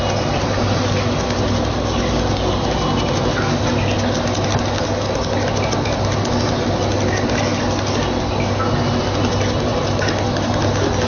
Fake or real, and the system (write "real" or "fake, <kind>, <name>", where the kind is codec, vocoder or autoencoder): real